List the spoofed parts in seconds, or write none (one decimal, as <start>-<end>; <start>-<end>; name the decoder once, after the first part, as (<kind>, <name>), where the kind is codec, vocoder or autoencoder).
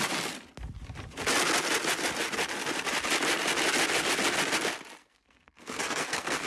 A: 5.0-6.5 (codec, SNAC)